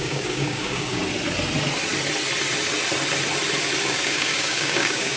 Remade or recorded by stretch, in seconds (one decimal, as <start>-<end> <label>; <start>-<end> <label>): 0.0-1.0 remade; 1.0-3.8 recorded; 3.8-5.2 remade